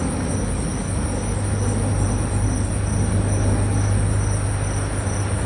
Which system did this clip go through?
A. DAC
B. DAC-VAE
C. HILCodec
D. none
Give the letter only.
D